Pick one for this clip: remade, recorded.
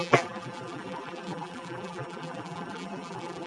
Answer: remade